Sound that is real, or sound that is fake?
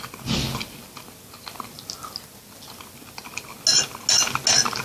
real